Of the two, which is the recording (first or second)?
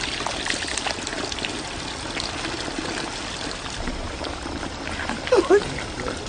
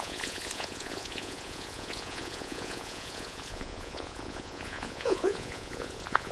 first